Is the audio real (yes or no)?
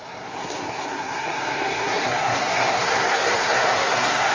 no